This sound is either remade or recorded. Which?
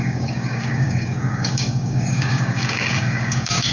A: remade